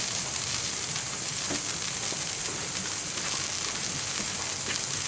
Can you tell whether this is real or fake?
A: real